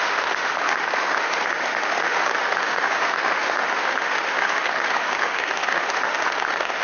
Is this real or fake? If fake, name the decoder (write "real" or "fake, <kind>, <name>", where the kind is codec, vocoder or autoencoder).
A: fake, autoencoder, DAC-VAE